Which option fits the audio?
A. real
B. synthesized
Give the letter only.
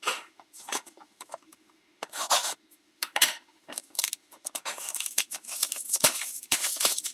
B